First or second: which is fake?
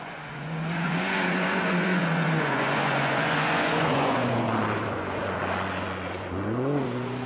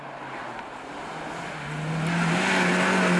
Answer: first